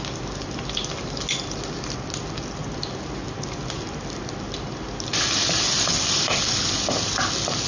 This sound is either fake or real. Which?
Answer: real